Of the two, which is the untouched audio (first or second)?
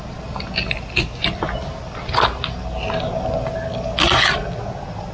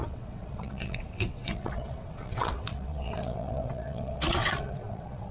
first